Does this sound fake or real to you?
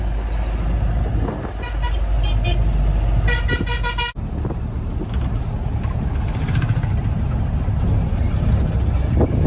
real